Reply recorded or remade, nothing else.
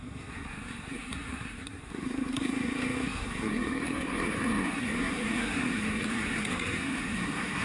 remade